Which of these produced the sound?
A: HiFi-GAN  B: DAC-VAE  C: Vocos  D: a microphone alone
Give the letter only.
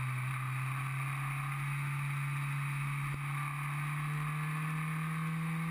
D